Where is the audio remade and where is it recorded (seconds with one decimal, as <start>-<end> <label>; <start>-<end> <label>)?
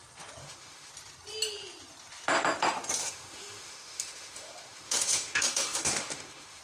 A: 0.0-0.4 recorded; 0.4-0.9 remade; 0.9-3.0 recorded; 3.0-6.6 remade